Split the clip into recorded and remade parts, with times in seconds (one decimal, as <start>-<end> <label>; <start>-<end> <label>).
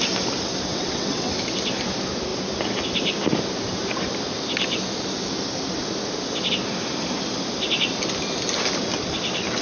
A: 0.0-0.7 recorded; 0.7-1.3 remade; 1.3-9.6 recorded